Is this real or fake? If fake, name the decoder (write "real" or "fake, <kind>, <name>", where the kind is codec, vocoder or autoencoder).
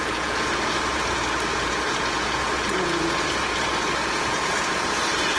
fake, vocoder, Vocos